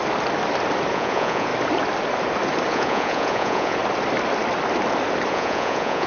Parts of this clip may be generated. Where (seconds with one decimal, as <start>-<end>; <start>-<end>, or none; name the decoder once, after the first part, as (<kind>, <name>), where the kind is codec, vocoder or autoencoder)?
0.9-1.5 (vocoder, Vocos); 2.7-3.8; 5.3-6.1